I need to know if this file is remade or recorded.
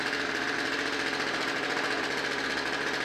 recorded